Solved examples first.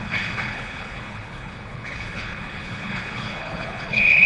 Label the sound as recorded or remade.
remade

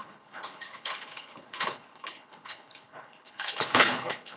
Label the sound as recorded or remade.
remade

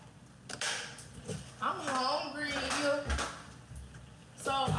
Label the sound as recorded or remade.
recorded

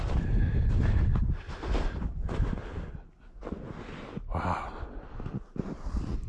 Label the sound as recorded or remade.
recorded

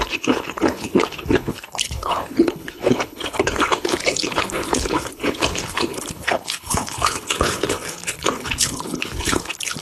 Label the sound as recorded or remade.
remade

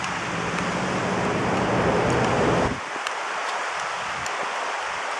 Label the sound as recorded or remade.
recorded